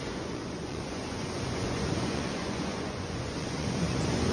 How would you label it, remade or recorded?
remade